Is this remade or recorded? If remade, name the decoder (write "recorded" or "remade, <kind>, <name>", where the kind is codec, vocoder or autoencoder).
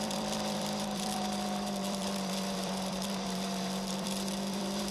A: remade, vocoder, BigVGAN v2